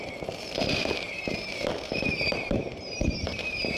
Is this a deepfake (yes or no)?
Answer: yes